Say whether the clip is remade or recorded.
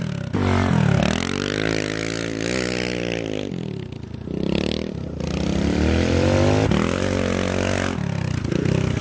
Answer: recorded